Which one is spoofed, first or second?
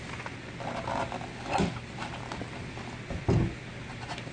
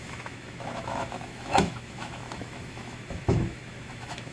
second